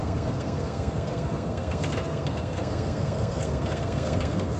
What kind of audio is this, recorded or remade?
remade